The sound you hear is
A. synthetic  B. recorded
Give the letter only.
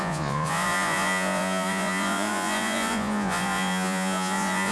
A